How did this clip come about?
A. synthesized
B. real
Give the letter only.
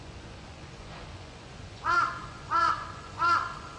A